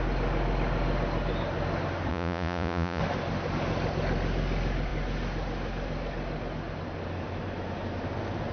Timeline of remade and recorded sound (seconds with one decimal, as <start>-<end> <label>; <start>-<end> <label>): 0.0-2.1 recorded; 2.1-3.0 remade; 3.0-8.5 recorded